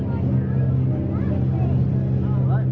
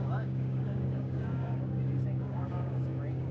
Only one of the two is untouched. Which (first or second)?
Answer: first